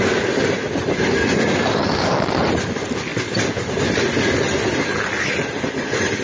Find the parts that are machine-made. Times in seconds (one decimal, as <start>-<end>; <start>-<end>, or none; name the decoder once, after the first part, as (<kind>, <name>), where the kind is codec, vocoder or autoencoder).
none